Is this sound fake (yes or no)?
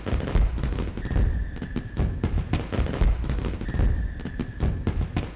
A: no